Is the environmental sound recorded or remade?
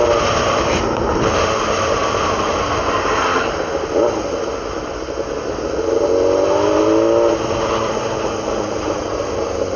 recorded